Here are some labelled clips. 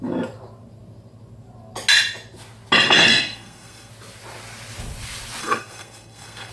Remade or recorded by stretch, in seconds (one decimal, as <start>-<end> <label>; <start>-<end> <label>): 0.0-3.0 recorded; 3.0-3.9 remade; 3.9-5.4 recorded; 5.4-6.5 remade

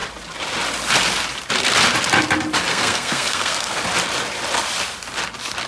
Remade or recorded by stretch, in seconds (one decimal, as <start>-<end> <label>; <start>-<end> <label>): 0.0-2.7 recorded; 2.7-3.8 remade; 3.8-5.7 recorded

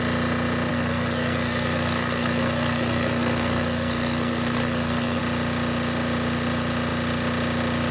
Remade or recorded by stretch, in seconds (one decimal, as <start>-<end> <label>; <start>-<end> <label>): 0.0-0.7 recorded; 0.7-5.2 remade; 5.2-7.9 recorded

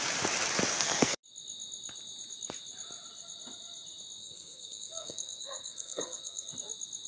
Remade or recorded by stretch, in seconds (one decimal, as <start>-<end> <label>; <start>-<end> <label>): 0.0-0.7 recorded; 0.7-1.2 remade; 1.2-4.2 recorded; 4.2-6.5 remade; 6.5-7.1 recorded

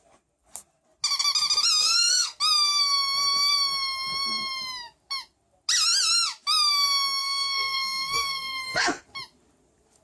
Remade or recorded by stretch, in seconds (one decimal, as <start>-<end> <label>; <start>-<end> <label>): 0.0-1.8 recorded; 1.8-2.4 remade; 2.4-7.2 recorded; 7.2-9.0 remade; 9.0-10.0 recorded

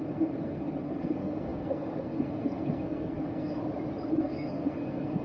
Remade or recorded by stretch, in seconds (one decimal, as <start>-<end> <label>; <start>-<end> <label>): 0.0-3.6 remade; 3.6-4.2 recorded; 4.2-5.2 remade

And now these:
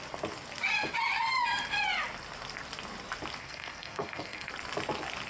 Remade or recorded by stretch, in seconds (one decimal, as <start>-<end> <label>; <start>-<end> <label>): 0.0-3.4 recorded; 3.4-4.5 remade; 4.5-5.3 recorded

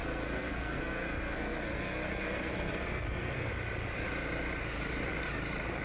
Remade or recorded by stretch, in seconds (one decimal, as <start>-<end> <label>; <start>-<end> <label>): 0.0-3.5 remade; 3.5-5.8 recorded